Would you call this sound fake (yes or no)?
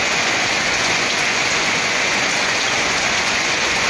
yes